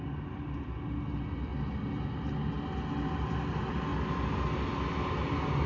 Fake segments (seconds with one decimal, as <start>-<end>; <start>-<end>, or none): none